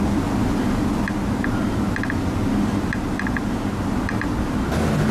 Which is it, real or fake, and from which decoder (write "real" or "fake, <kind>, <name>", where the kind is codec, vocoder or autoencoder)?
real